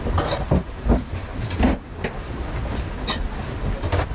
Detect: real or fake real